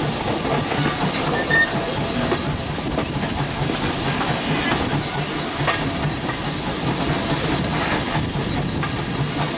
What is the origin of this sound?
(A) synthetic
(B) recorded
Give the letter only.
B